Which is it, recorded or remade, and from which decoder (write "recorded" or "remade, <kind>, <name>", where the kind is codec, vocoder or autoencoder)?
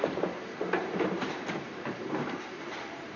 remade, vocoder, BigVGAN v2